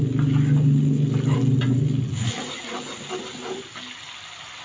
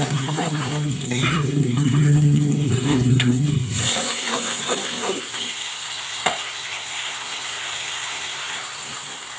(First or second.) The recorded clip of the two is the first